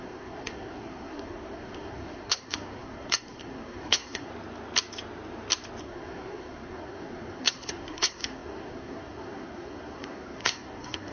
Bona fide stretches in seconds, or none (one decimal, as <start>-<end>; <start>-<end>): 4.3-5.8